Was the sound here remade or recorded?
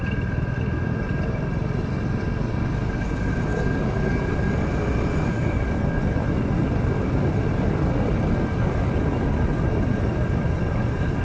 recorded